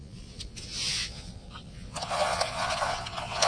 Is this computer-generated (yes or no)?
yes